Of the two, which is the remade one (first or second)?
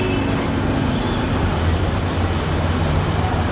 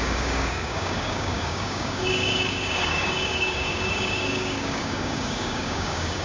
second